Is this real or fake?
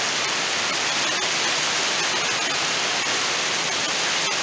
real